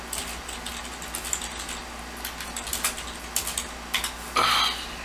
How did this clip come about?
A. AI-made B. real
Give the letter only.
B